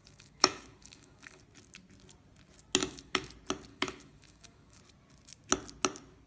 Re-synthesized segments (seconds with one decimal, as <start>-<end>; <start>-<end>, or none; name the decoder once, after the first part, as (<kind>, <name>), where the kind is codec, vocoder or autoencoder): 0.0-1.4 (autoencoder, DAC-VAE); 2.8-3.3; 3.7-4.8